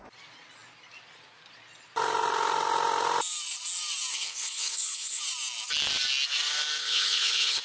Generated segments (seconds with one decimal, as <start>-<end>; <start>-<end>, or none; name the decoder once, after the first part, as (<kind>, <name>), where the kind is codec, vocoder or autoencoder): 4.1-5.2 (codec, HILCodec); 6.8-7.6